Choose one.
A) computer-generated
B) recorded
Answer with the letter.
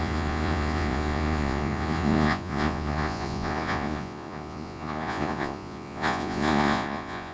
A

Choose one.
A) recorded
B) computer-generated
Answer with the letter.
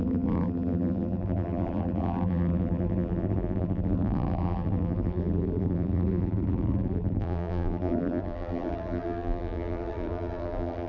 B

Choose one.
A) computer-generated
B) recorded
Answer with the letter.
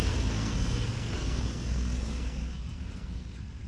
A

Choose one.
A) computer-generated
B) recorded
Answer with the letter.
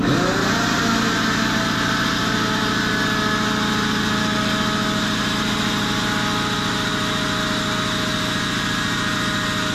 B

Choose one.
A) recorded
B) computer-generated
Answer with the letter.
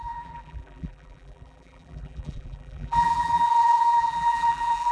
B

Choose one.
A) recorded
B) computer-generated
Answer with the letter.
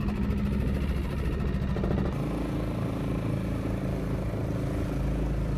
A